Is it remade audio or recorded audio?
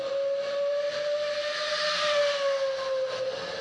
recorded